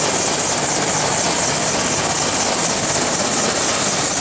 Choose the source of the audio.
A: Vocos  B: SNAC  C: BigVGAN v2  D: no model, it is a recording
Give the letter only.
D